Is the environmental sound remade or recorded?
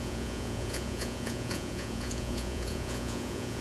remade